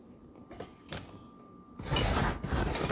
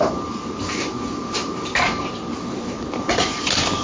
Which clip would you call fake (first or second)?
second